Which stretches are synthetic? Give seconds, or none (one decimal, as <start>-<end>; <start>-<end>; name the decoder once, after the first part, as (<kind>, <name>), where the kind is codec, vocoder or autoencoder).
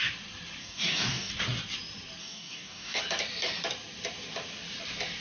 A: 0.6-1.3 (codec, DAC); 2.2-3.0